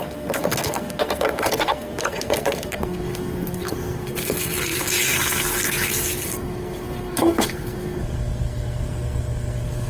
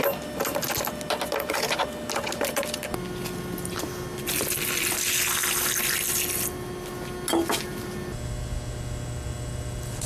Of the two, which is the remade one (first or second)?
first